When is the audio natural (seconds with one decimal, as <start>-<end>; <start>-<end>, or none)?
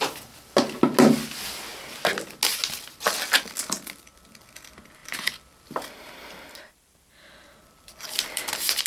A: 0.0-5.0